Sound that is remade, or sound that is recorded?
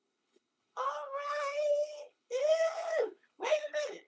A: remade